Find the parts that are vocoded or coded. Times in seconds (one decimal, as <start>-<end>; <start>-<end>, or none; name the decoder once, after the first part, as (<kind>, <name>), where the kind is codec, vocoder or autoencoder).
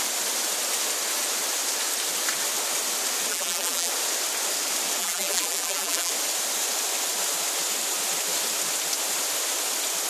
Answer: 3.3-3.9 (vocoder, BigVGAN v2); 5.0-6.1